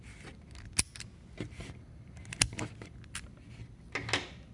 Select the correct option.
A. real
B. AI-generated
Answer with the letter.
A